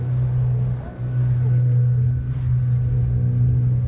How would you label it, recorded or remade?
recorded